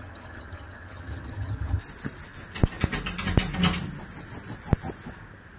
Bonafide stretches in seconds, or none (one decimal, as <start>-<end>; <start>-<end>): 1.8-5.6

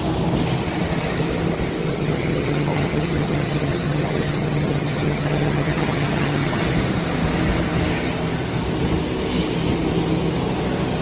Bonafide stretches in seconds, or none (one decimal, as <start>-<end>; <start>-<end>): 0.0-1.9; 6.6-11.0